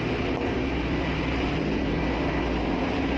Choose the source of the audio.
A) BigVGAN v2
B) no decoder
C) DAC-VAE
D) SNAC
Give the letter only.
B